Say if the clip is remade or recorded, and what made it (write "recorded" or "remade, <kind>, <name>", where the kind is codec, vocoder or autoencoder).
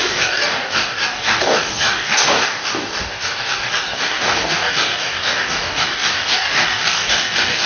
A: remade, codec, DAC